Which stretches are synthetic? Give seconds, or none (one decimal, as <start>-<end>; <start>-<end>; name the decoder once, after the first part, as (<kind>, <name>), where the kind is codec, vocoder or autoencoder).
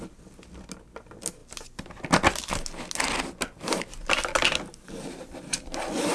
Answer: none